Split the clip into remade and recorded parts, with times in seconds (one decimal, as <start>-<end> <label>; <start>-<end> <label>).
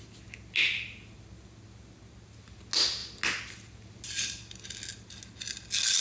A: 0.0-6.0 recorded